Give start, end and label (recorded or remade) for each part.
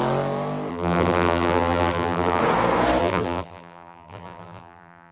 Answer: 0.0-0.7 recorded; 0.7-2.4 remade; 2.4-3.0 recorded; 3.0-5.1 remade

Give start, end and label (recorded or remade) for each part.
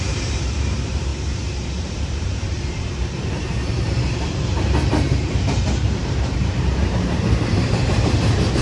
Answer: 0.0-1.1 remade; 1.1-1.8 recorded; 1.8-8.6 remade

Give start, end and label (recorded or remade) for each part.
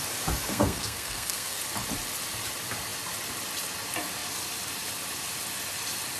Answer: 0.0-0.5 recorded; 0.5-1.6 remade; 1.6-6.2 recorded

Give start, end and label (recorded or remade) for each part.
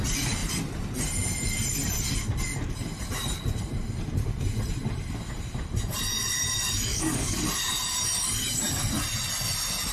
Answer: 0.0-6.9 recorded; 6.9-7.4 remade; 7.4-9.9 recorded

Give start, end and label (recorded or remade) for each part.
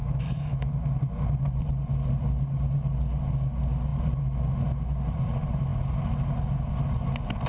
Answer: 0.0-0.7 remade; 0.7-7.5 recorded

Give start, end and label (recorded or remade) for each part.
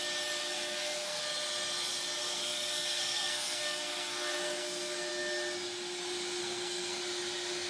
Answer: 0.0-0.4 recorded; 0.4-1.2 remade; 1.2-2.2 recorded; 2.2-5.1 remade; 5.1-6.4 recorded; 6.4-7.0 remade; 7.0-7.7 recorded